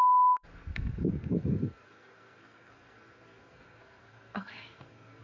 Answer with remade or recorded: remade